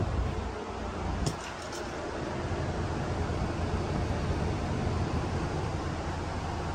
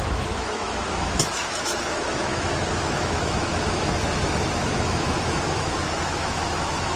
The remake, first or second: second